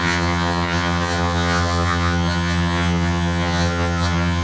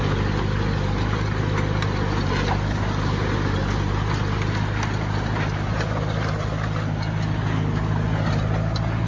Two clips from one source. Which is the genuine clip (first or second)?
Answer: second